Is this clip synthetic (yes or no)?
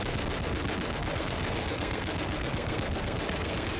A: yes